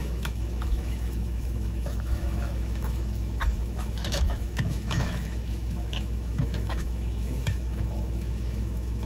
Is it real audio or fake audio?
fake